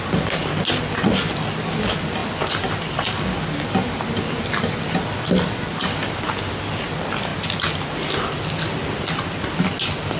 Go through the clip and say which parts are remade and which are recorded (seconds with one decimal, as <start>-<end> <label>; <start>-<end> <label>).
0.0-10.2 recorded